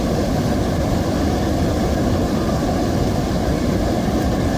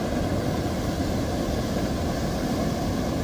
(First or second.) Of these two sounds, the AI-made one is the first